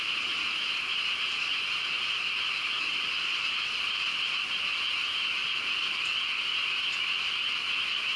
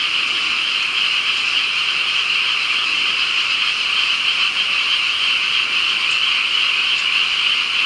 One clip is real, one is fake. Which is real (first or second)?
first